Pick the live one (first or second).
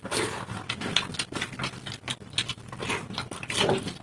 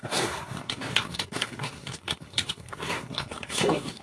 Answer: first